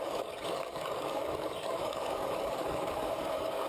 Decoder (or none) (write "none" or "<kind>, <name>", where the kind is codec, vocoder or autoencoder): codec, DAC